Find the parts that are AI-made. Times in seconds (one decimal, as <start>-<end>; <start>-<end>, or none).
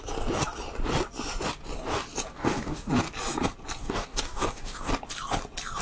2.3-2.9; 3.8-4.9